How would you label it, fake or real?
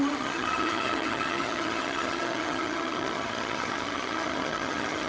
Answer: fake